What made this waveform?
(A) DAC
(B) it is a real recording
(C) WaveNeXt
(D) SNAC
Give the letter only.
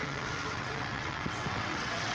C